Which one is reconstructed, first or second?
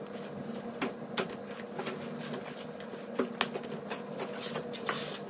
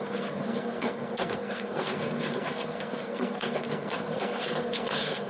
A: second